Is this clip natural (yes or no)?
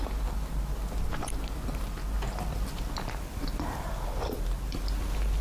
yes